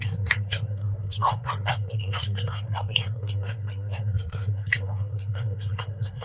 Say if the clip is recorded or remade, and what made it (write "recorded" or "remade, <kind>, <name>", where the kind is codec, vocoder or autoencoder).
remade, codec, SNAC